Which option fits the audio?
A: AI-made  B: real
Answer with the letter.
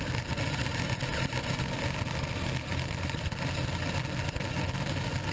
B